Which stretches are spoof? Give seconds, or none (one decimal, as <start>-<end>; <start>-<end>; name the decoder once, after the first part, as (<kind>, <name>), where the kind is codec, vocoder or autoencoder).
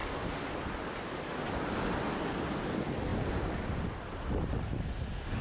3.1-4.6 (vocoder, BigVGAN v2)